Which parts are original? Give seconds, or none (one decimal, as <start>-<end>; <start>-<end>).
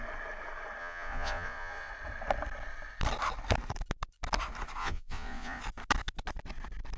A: 0.0-0.8; 1.9-4.8; 5.6-7.0